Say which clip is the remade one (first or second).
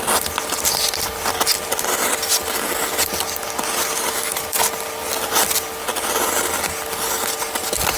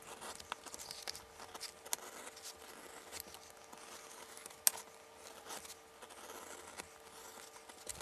first